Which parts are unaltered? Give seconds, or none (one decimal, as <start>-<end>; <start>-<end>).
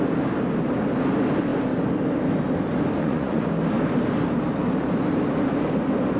0.0-3.0; 3.5-6.2